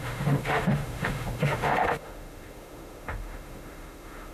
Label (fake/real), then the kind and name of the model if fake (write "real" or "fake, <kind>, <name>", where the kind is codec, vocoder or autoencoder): fake, autoencoder, DAC-VAE